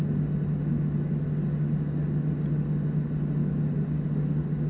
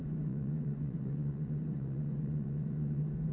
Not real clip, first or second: second